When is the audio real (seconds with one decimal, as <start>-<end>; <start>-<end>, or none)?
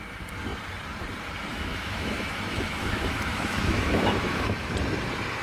0.0-1.5; 4.7-5.4